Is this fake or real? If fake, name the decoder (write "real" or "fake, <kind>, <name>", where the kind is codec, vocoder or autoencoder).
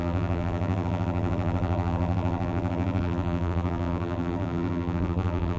fake, vocoder, BigVGAN v2